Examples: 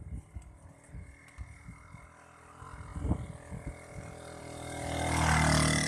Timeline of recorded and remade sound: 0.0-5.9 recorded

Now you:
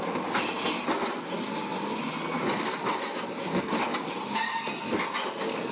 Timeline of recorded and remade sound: 0.0-5.7 recorded

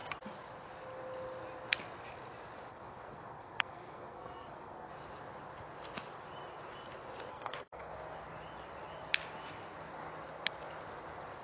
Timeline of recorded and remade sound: 0.0-2.7 recorded; 2.7-4.9 remade; 4.9-7.3 recorded; 7.3-7.9 remade; 7.9-11.4 recorded

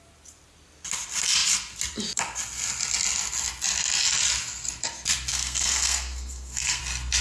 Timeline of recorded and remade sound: 0.0-5.3 recorded; 5.3-6.8 remade; 6.8-7.2 recorded

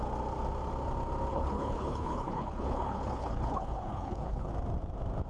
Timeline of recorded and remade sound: 0.0-1.3 recorded; 1.3-4.5 remade; 4.5-5.3 recorded

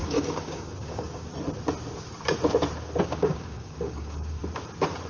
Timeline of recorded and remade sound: 0.0-1.3 remade; 1.3-3.0 recorded; 3.0-4.4 remade; 4.4-5.1 recorded

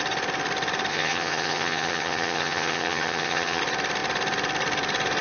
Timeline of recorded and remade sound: 0.0-0.9 recorded; 0.9-3.6 remade; 3.6-5.2 recorded

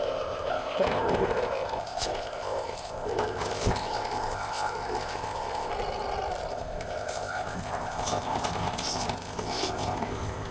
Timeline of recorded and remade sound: 0.0-5.7 remade; 5.7-6.5 recorded; 6.5-10.5 remade